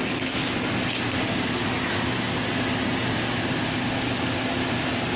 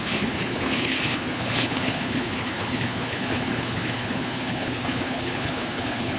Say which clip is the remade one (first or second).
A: second